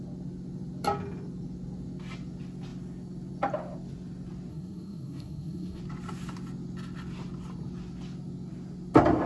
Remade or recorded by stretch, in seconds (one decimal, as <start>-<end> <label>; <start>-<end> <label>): 0.0-4.5 recorded; 4.5-5.8 remade; 5.8-9.3 recorded